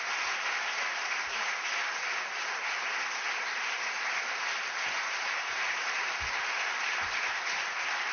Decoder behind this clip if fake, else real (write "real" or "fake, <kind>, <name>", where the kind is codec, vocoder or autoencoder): real